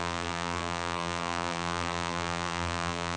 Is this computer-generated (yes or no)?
yes